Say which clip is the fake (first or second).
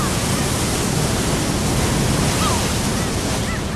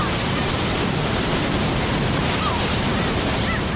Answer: second